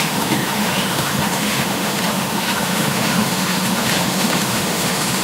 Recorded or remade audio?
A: remade